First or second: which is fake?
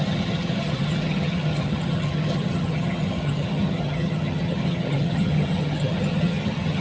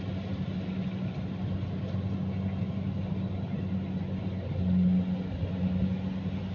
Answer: first